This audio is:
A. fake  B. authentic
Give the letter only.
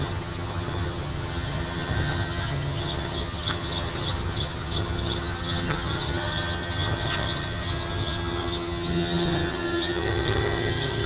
A